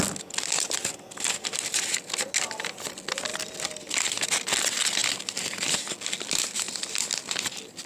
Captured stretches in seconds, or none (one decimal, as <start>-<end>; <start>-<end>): 0.0-7.9